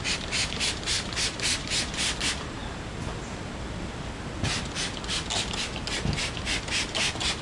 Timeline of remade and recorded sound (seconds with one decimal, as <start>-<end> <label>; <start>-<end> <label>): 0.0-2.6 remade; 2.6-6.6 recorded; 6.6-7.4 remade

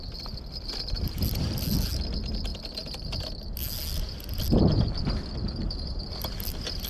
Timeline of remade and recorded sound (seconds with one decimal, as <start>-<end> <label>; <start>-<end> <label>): 0.0-6.9 recorded

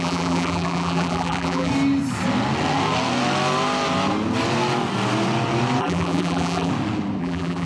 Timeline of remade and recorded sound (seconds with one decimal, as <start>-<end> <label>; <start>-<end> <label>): 0.0-1.7 remade; 1.7-5.8 recorded; 5.8-6.7 remade; 6.7-7.2 recorded; 7.2-7.7 remade

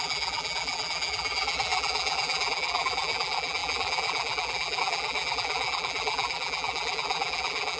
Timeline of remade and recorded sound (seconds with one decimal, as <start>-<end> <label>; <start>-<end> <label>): 0.0-7.8 remade

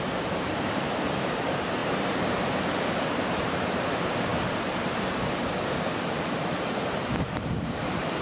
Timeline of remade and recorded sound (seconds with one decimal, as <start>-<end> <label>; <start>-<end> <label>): 0.0-8.2 remade

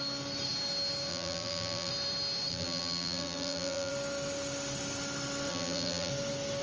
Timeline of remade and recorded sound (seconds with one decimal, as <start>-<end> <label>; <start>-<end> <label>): 0.0-1.1 recorded; 1.1-1.9 remade; 1.9-2.5 recorded; 2.5-3.9 remade; 3.9-5.5 recorded; 5.5-6.1 remade; 6.1-6.6 recorded